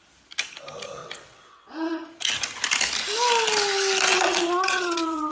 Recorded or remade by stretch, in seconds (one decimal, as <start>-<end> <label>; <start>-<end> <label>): 0.0-1.0 recorded; 1.0-2.1 remade; 2.1-4.1 recorded; 4.1-5.3 remade